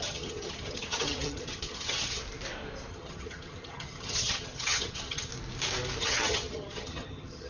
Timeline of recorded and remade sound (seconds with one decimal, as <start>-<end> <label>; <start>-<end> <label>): 0.0-2.2 remade; 2.2-2.9 recorded; 2.9-5.3 remade; 5.3-6.0 recorded; 6.0-7.5 remade